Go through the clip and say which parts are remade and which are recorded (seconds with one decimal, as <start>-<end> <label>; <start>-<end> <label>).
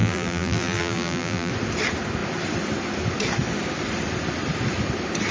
0.0-1.5 remade; 1.5-5.3 recorded